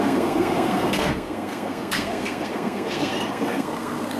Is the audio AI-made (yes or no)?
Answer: yes